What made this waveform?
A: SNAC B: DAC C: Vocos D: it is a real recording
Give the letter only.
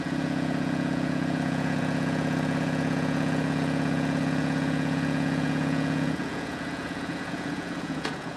C